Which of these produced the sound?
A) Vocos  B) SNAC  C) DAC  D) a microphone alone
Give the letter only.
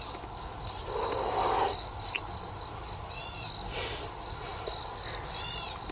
D